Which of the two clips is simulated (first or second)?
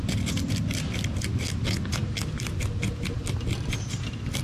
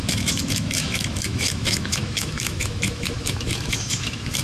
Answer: second